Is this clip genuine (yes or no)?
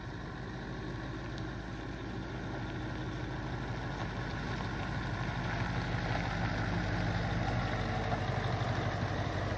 yes